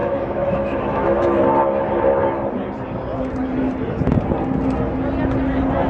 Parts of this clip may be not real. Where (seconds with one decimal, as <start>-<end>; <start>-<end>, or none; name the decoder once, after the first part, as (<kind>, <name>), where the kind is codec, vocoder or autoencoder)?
0.0-1.4 (autoencoder, DAC-VAE)